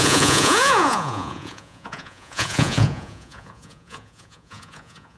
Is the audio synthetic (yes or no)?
yes